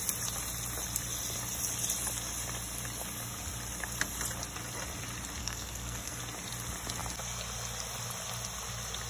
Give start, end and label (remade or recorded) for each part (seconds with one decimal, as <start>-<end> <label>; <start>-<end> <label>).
0.0-5.4 recorded; 5.4-6.2 remade; 6.2-9.1 recorded